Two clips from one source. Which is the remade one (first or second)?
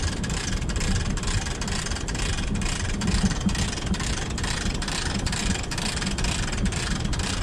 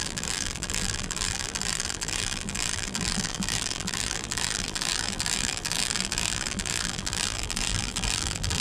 second